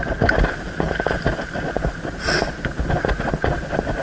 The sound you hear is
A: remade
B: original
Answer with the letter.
B